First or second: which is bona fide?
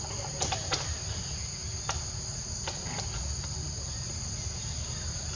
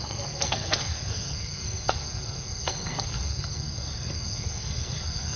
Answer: first